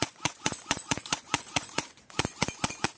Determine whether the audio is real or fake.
fake